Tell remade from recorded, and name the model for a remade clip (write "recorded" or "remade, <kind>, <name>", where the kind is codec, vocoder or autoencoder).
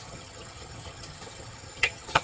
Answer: remade, vocoder, HiFi-GAN